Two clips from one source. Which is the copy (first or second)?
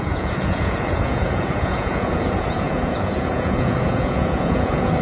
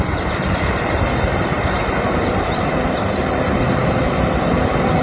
first